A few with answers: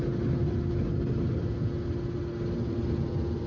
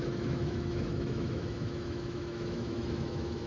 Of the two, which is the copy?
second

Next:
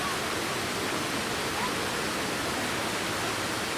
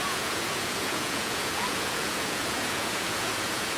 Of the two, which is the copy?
second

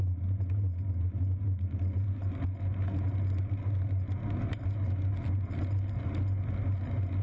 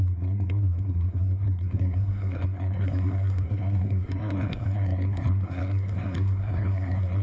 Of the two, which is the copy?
second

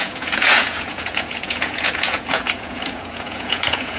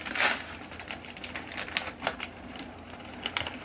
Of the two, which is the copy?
first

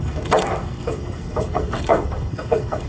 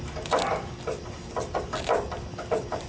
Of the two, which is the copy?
first